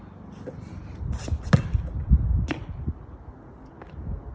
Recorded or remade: recorded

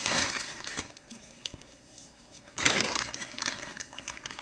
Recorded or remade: remade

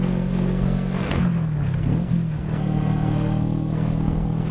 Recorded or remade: remade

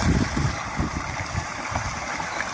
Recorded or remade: recorded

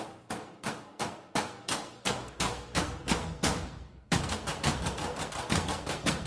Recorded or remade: remade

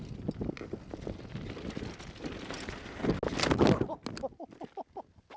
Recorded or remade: recorded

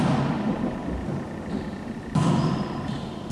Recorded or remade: recorded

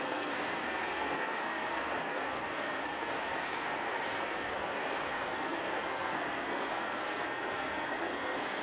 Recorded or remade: remade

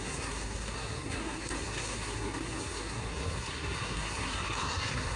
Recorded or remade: remade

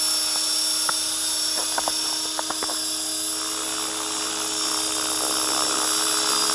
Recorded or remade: recorded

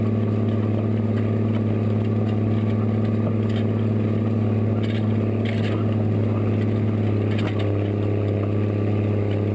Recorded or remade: recorded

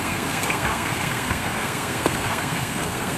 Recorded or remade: remade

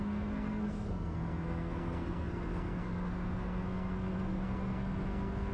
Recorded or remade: remade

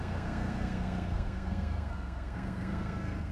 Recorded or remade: remade